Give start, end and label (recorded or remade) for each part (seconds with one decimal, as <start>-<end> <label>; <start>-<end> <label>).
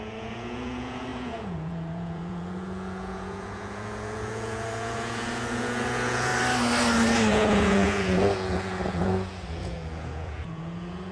0.0-6.3 remade; 6.3-7.3 recorded; 7.3-11.1 remade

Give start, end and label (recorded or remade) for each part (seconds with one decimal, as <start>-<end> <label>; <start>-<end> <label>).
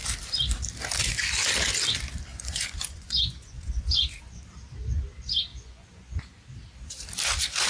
0.0-2.3 recorded; 2.3-4.4 remade; 4.4-5.5 recorded; 5.5-6.2 remade; 6.2-7.7 recorded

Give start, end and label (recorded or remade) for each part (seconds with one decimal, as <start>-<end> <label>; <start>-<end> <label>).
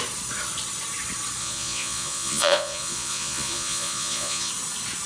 0.0-1.4 recorded; 1.4-4.5 remade; 4.5-5.1 recorded